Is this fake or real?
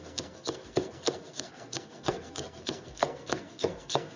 fake